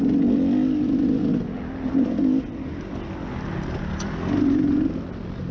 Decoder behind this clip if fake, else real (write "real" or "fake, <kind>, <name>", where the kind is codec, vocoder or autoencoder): real